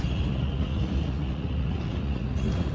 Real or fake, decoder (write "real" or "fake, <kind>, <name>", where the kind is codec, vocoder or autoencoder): fake, vocoder, Vocos